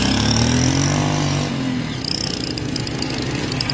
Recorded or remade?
recorded